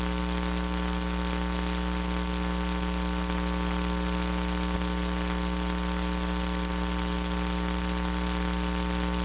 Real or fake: real